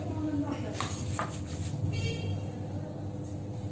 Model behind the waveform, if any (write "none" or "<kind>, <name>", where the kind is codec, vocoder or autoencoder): none